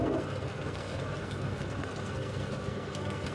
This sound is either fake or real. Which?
fake